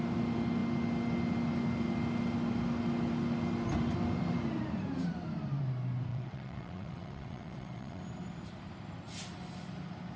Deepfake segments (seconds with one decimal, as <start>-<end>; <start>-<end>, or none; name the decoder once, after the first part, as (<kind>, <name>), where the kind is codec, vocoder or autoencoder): 6.1-8.0 (vocoder, WaveNeXt)

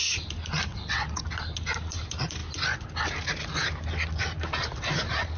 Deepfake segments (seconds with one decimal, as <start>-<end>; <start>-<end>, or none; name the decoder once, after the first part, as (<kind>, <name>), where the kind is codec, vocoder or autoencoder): 0.7-1.2 (vocoder, WaveNeXt)

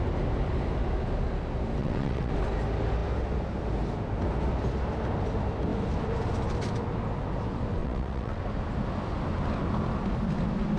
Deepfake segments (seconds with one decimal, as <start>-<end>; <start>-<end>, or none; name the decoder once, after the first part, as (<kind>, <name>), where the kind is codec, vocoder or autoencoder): 1.8-2.3 (vocoder, WaveNeXt); 7.8-8.4